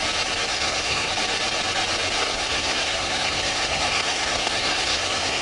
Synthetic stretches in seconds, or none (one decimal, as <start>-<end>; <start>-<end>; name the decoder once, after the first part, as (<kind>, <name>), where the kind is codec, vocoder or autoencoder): 0.5-1.1 (codec, SNAC); 2.2-5.4